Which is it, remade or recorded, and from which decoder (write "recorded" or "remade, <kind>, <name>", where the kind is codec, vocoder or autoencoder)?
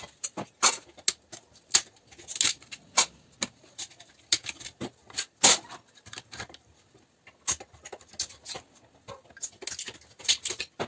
recorded